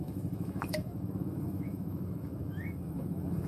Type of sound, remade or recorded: remade